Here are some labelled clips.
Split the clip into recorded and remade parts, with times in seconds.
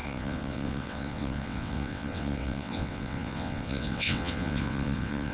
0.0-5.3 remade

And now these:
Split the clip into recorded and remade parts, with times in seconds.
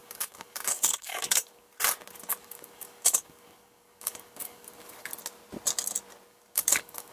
0.0-1.7 remade; 1.7-2.4 recorded; 2.4-5.1 remade; 5.1-6.3 recorded; 6.3-7.1 remade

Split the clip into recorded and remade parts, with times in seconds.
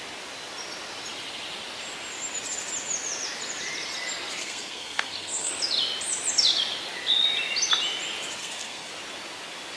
0.0-4.4 recorded; 4.4-5.5 remade; 5.5-8.4 recorded; 8.4-8.9 remade; 8.9-9.8 recorded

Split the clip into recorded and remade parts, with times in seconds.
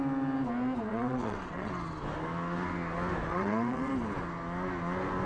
0.0-0.9 recorded; 0.9-1.7 remade; 1.7-3.3 recorded; 3.3-3.9 remade; 3.9-5.3 recorded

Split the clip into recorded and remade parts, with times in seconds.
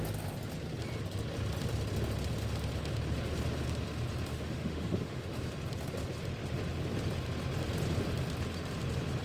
0.0-4.3 recorded; 4.3-5.4 remade; 5.4-9.2 recorded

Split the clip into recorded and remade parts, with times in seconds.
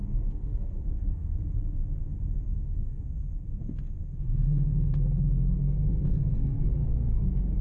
0.0-1.4 remade; 1.4-2.3 recorded; 2.3-7.6 remade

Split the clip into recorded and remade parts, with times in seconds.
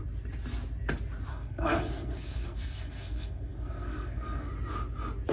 0.0-1.3 recorded; 1.3-4.5 remade; 4.5-5.3 recorded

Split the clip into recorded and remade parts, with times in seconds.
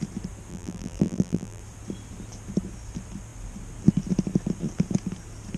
0.0-0.5 recorded; 0.5-1.6 remade; 1.6-5.6 recorded